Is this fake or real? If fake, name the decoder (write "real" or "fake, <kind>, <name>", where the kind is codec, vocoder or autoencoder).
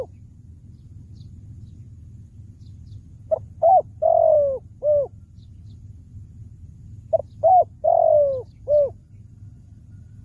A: real